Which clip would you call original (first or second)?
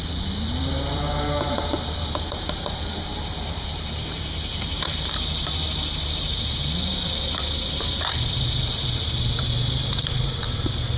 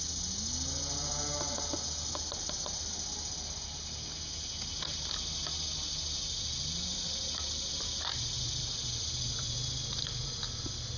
second